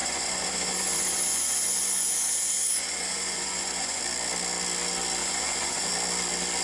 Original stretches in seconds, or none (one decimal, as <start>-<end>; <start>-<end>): 4.0-5.2; 5.9-6.6